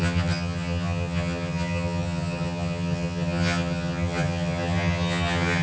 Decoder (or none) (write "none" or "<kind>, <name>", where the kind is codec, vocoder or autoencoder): vocoder, HiFi-GAN